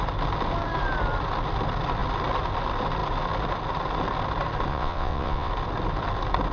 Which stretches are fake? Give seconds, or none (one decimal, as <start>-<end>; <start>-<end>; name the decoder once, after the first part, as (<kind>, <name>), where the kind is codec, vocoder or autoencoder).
4.7-5.5 (vocoder, WaveNeXt)